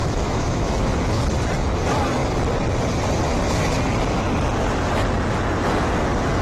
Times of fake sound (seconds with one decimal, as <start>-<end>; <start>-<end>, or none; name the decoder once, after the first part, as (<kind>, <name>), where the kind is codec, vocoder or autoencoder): 0.0-1.0 (autoencoder, DAC-VAE)